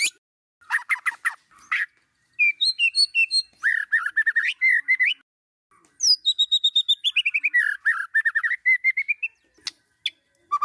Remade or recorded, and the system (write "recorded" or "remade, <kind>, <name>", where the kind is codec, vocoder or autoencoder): recorded